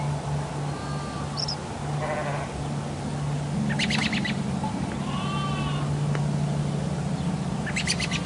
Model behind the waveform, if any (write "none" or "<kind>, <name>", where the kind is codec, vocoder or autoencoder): none